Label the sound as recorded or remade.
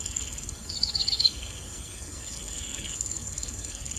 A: remade